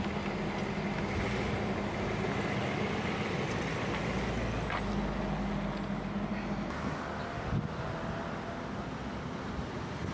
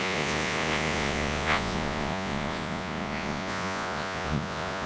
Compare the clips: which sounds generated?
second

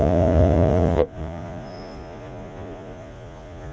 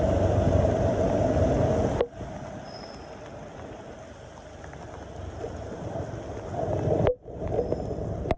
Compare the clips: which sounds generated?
first